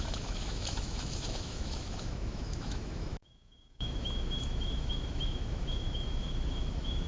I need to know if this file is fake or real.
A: fake